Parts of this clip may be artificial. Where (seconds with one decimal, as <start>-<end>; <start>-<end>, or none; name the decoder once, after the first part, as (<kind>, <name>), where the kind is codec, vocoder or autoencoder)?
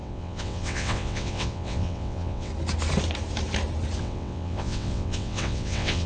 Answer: 0.0-2.5 (vocoder, WaveNeXt); 4.0-6.1